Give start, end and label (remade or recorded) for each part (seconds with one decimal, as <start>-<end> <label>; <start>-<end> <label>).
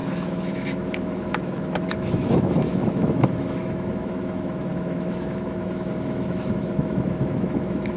0.0-8.0 remade